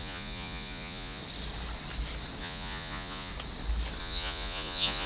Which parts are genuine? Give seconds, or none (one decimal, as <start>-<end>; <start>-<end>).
1.2-2.4; 3.3-4.0